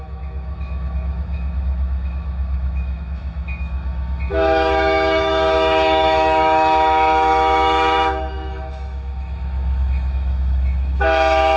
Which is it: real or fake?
fake